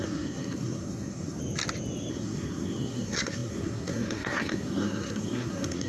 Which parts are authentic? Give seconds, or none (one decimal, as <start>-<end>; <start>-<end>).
1.4-2.1